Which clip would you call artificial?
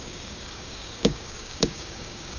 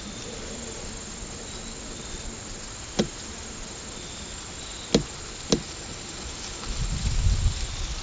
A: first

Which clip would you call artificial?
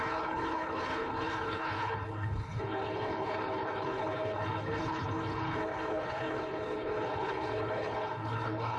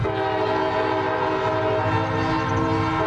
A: first